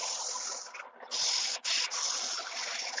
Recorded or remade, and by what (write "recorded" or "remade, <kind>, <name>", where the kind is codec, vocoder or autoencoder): recorded